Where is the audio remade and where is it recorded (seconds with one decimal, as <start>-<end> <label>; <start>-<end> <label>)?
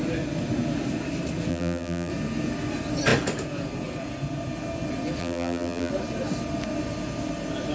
0.0-1.5 recorded; 1.5-2.1 remade; 2.1-5.2 recorded; 5.2-5.9 remade; 5.9-7.7 recorded